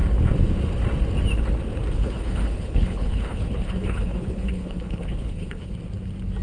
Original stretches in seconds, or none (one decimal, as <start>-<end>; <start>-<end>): 0.0-2.0; 5.7-6.4

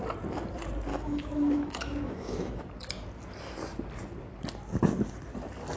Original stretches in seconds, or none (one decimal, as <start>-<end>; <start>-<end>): 0.0-0.9; 2.6-5.8